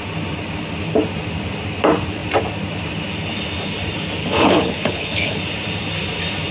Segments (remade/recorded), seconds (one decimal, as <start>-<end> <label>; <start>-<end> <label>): 0.0-4.2 recorded; 4.2-5.4 remade; 5.4-6.5 recorded